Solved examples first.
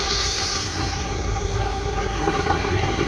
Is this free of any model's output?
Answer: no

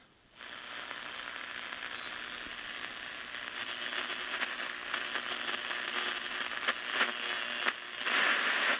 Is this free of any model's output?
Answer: yes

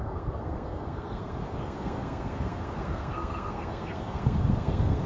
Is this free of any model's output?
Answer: no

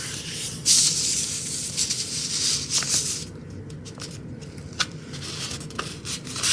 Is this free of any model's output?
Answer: yes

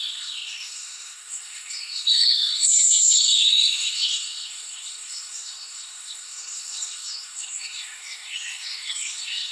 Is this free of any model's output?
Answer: no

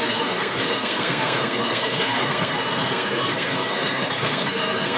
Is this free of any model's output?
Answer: no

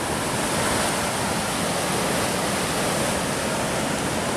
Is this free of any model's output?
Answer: yes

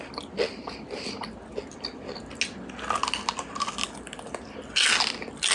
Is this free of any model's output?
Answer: yes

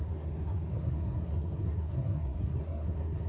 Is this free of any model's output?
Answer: no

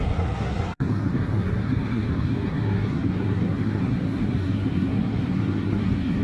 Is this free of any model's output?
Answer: no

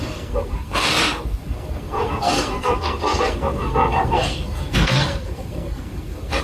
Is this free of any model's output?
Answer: no